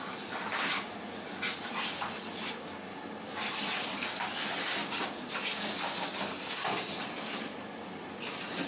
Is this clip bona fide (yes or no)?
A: yes